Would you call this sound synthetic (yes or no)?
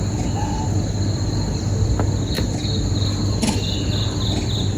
no